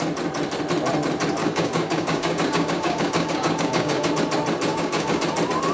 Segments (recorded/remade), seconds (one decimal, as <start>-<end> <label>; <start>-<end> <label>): 0.0-1.4 recorded; 1.4-4.1 remade; 4.1-4.7 recorded; 4.7-5.2 remade; 5.2-5.7 recorded